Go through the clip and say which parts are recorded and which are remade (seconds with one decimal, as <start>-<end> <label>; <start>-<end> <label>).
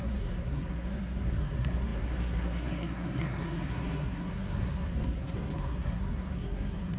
0.0-7.0 remade